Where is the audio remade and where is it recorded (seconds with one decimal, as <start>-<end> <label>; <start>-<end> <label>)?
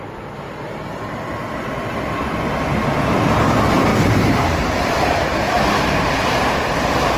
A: 0.0-3.9 recorded; 3.9-6.6 remade; 6.6-7.2 recorded